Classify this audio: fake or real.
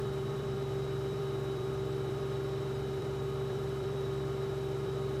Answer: fake